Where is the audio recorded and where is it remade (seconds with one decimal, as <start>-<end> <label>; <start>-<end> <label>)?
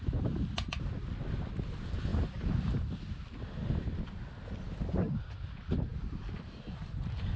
0.0-2.1 recorded; 2.1-2.9 remade; 2.9-7.4 recorded